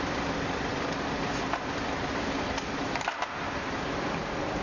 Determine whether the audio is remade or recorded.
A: recorded